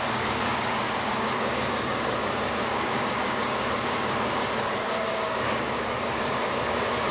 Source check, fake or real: fake